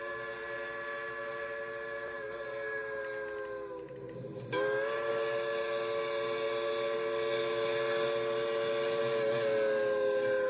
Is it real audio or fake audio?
real